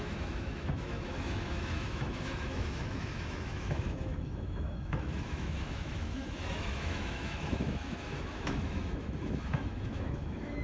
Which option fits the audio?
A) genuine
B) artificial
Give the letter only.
B